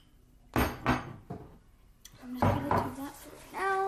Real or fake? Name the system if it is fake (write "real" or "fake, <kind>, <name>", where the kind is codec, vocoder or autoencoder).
real